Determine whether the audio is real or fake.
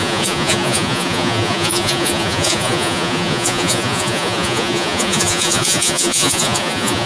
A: fake